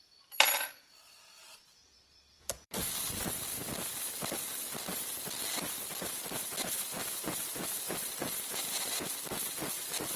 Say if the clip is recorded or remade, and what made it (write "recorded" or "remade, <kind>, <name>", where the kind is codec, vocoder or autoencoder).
remade, vocoder, BigVGAN v2